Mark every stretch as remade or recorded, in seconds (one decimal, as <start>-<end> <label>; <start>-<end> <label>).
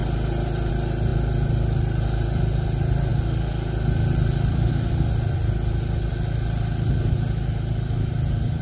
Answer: 0.0-8.6 recorded